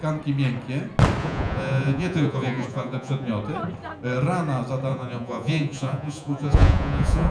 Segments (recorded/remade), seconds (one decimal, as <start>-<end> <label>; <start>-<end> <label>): 0.0-1.2 recorded; 1.2-3.3 remade; 3.3-4.9 recorded; 4.9-7.3 remade